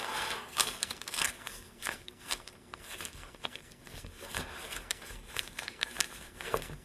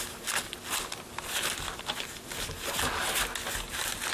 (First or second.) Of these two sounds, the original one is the second